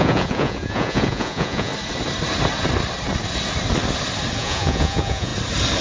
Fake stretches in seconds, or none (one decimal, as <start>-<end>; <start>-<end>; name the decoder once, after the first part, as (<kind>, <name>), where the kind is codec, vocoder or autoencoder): 0.0-1.7 (vocoder, Vocos); 4.4-5.3